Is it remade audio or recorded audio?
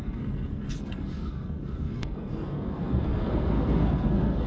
remade